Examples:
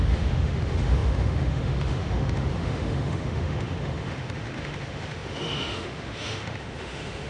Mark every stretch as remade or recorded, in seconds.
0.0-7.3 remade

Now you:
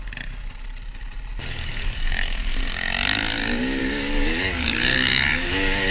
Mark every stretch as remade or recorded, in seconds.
0.0-1.4 recorded; 1.4-2.6 remade; 2.6-3.8 recorded; 3.8-5.9 remade

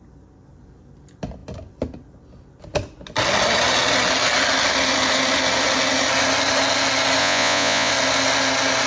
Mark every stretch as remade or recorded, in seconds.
0.0-7.2 recorded; 7.2-7.9 remade; 7.9-8.9 recorded

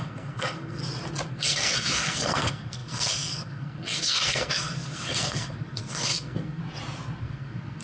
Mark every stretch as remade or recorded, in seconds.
0.0-0.8 remade; 0.8-1.3 recorded; 1.3-6.6 remade; 6.6-7.2 recorded; 7.2-7.8 remade

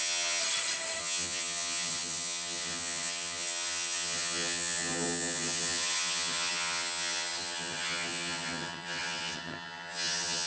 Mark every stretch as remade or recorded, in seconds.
0.0-0.4 remade; 0.4-1.0 recorded; 1.0-10.5 remade